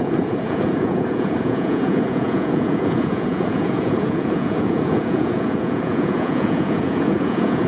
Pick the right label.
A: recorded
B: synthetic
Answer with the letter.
B